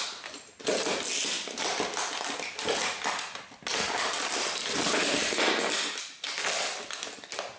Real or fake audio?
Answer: real